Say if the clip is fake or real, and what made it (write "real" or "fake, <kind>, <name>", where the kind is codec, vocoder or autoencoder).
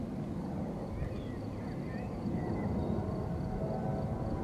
real